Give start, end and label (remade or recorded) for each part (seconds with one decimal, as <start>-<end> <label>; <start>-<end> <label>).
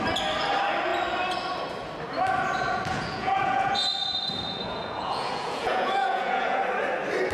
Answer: 0.0-2.9 recorded; 2.9-6.6 remade; 6.6-7.3 recorded